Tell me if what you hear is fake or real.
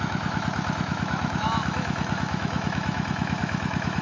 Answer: fake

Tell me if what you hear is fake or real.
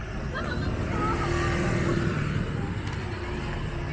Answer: real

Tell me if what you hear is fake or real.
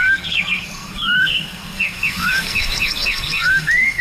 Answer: fake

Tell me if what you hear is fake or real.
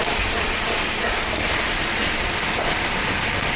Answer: real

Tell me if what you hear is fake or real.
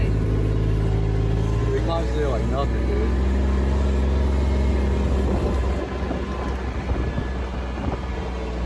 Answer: real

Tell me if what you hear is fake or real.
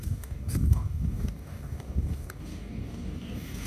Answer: fake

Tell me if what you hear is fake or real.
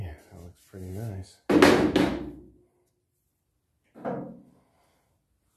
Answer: real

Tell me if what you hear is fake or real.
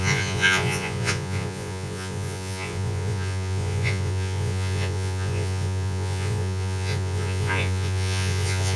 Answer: fake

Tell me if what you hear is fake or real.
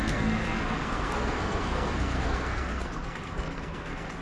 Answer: fake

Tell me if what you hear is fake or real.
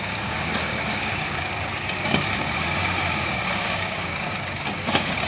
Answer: fake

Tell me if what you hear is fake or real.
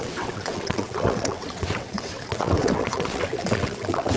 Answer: fake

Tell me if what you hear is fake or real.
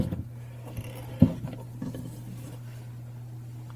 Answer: real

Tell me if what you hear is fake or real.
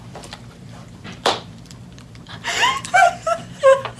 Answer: fake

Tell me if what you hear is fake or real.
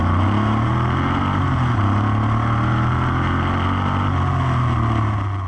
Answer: real